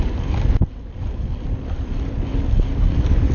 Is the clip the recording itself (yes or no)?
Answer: no